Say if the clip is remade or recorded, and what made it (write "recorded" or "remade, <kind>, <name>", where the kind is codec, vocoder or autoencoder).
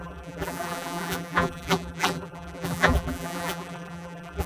remade, vocoder, BigVGAN v2